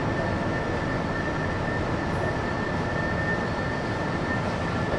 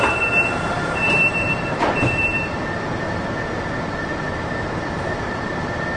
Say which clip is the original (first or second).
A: first